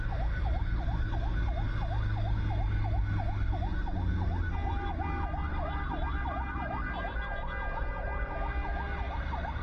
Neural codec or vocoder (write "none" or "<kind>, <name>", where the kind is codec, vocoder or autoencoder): none